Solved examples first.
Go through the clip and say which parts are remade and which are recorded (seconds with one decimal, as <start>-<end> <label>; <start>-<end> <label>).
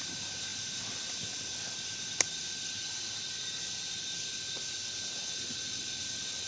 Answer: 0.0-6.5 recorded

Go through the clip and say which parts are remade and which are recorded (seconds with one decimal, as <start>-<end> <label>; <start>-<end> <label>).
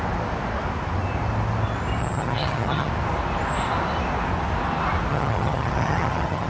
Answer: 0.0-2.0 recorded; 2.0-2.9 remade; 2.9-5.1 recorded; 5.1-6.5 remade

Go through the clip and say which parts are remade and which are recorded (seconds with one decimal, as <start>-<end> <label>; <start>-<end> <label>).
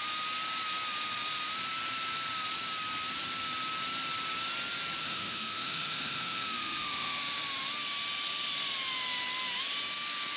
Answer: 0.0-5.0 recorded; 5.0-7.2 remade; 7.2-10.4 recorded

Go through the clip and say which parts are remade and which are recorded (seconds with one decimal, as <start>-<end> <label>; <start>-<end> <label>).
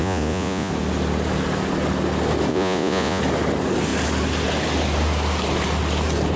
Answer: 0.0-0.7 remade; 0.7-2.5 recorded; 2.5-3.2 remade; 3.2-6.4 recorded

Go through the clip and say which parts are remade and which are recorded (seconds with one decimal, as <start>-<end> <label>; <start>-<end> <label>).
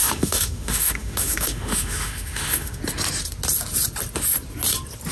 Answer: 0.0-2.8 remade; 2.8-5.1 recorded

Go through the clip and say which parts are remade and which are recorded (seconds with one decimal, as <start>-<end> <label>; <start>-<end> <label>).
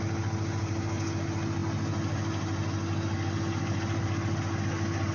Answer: 0.0-5.1 recorded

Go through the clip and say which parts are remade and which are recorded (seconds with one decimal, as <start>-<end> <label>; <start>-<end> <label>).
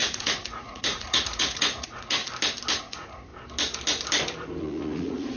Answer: 0.0-2.2 remade; 2.2-2.8 recorded; 2.8-3.3 remade; 3.3-4.6 recorded; 4.6-5.4 remade